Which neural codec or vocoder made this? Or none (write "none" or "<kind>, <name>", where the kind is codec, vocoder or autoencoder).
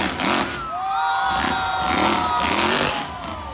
none